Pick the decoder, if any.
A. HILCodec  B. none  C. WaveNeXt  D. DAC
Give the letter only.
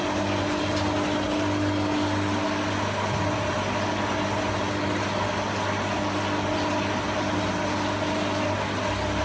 B